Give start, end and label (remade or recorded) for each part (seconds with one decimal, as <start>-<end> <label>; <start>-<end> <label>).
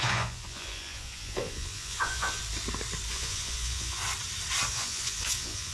0.0-2.4 remade; 2.4-3.1 recorded; 3.1-4.0 remade; 4.0-4.7 recorded; 4.7-5.7 remade